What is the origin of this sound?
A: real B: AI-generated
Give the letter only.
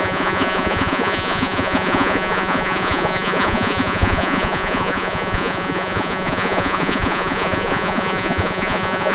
B